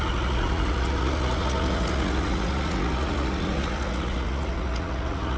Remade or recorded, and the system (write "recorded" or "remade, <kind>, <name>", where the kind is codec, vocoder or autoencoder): remade, vocoder, Vocos